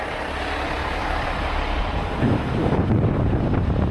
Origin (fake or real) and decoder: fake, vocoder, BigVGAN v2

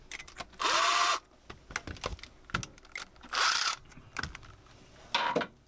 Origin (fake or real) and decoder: real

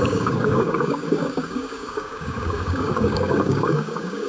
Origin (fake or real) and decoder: fake, codec, DAC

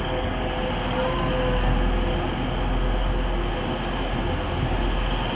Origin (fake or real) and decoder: real